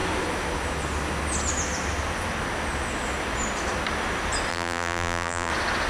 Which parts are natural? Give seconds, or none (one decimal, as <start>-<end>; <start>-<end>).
0.0-4.5; 5.5-5.9